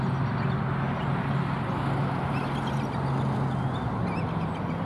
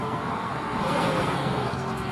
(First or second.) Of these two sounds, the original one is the first